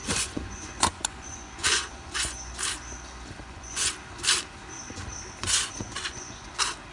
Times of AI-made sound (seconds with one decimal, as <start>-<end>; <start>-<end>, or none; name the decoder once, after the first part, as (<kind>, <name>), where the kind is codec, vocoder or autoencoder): 0.0-2.5 (vocoder, Vocos); 3.4-3.9; 5.4-6.5

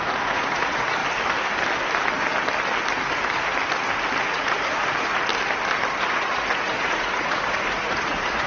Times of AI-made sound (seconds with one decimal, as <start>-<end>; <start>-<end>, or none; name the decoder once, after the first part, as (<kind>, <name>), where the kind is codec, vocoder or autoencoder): 0.0-1.0 (vocoder, Vocos); 4.2-5.3; 6.1-8.5

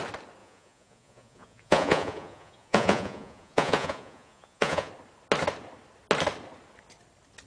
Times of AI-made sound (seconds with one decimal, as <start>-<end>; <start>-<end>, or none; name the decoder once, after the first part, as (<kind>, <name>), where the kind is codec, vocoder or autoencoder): 0.4-4.9 (vocoder, Vocos)

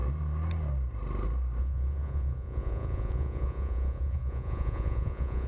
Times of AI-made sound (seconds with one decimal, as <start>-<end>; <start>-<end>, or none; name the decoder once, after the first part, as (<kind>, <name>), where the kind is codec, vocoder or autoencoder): 1.6-5.5 (vocoder, Vocos)

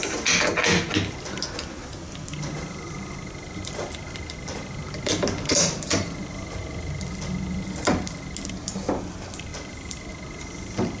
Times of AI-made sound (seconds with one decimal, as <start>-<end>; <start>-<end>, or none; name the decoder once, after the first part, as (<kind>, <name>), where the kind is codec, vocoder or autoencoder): none

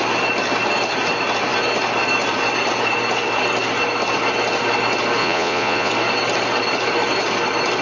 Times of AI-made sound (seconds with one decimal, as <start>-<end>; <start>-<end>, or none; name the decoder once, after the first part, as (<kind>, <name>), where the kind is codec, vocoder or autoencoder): 5.2-5.9 (vocoder, Vocos)